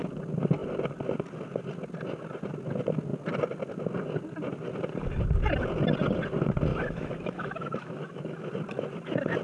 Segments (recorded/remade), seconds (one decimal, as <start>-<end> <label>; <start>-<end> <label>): 0.0-6.7 recorded; 6.7-8.5 remade; 8.5-9.4 recorded